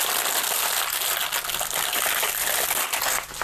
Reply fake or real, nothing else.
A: real